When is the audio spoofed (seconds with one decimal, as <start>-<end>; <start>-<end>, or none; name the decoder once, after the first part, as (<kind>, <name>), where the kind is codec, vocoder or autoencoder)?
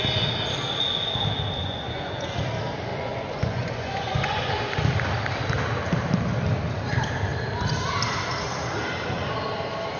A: 1.6-2.4 (vocoder, Vocos); 2.9-4.5